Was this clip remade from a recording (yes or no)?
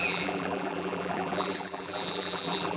yes